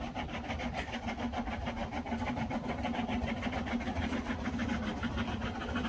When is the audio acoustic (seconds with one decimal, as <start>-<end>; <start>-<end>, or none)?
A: 0.0-3.9; 4.5-5.9